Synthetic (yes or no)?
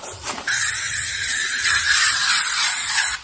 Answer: no